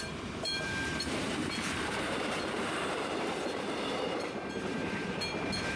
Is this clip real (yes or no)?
no